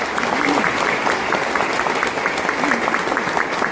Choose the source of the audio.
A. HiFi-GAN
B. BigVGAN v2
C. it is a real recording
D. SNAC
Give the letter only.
C